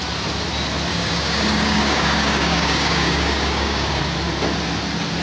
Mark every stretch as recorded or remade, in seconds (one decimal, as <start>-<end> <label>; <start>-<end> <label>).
0.0-0.9 recorded; 0.9-4.0 remade; 4.0-5.2 recorded

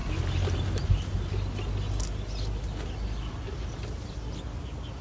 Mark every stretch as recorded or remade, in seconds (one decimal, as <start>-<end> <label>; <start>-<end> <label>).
0.0-5.0 recorded

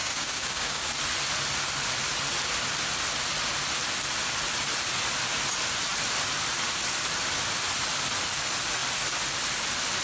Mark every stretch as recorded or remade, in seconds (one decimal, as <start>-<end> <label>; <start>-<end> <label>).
0.0-0.9 remade; 0.9-10.0 recorded

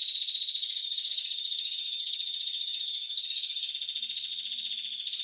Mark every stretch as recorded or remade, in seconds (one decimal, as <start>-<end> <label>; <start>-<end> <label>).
0.0-0.6 recorded; 0.6-3.7 remade; 3.7-5.2 recorded

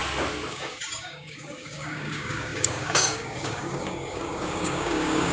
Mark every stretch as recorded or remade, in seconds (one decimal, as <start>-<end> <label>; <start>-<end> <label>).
0.0-0.5 recorded; 0.5-5.3 remade

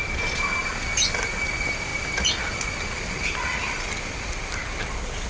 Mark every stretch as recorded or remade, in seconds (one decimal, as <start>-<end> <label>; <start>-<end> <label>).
0.0-5.3 recorded